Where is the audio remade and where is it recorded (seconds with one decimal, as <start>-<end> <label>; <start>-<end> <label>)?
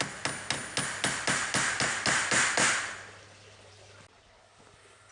0.0-5.1 recorded